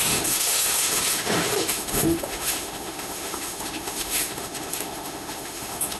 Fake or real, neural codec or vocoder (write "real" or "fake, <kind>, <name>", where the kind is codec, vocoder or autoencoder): fake, autoencoder, DAC-VAE